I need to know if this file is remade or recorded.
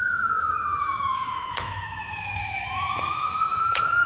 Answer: remade